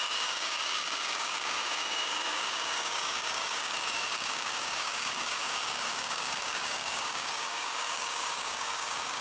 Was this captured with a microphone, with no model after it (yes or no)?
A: no